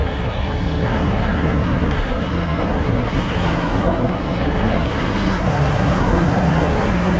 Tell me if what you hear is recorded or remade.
remade